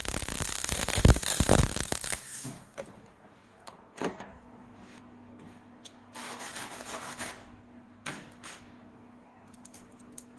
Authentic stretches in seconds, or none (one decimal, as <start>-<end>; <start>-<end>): none